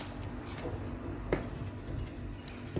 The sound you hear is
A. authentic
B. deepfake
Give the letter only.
A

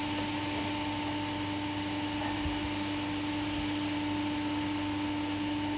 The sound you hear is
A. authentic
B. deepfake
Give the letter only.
A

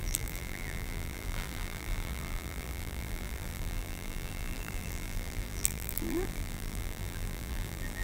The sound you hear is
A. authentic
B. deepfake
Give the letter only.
B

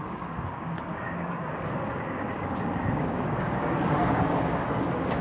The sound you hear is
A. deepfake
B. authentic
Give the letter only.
A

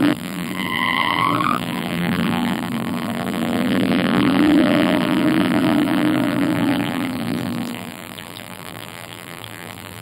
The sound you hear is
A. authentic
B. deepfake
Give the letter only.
B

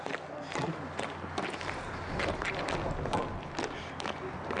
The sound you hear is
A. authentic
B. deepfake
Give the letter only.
A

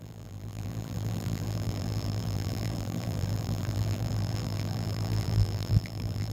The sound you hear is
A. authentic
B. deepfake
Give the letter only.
B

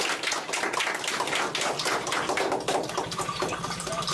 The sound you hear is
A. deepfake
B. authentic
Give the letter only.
B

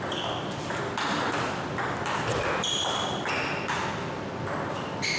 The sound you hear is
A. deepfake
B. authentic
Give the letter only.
B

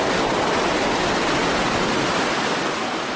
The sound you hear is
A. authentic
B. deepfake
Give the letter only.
A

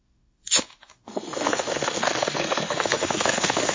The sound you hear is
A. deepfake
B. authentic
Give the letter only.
A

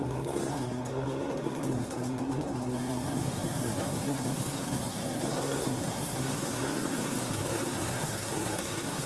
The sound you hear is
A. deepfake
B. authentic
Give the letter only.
A